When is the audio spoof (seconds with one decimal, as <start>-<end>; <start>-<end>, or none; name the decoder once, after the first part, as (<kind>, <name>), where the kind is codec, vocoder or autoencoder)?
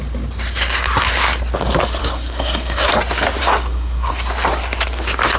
2.0-2.9 (codec, SNAC); 3.4-4.1